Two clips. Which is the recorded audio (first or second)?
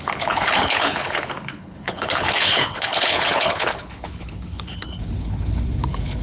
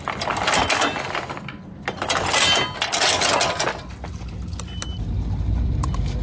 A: second